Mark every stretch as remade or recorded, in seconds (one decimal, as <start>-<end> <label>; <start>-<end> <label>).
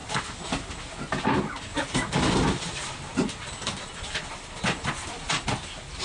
0.0-0.5 remade; 0.5-1.7 recorded; 1.7-5.3 remade; 5.3-6.0 recorded